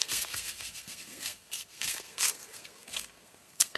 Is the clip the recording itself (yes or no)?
no